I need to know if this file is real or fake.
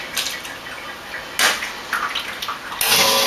real